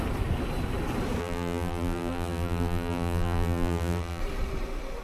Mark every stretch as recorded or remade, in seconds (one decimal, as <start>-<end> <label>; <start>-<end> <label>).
0.0-1.2 recorded; 1.2-4.2 remade; 4.2-5.0 recorded